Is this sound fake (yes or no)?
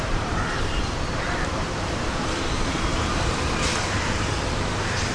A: yes